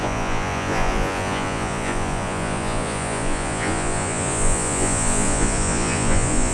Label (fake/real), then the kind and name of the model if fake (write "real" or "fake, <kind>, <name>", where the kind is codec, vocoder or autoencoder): fake, vocoder, Vocos